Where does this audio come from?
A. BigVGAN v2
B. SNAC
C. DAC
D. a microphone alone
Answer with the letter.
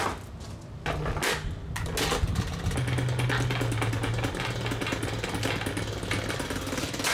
D